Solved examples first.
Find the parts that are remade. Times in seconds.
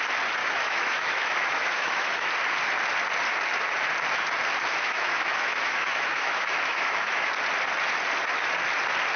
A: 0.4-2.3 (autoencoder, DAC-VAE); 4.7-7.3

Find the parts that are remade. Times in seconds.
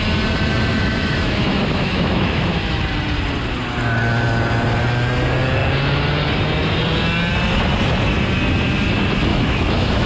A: 0.7-2.8 (autoencoder, DAC-VAE); 9.3-10.1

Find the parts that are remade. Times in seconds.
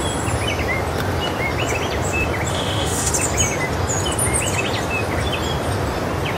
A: 2.5-3.1 (autoencoder, DAC-VAE)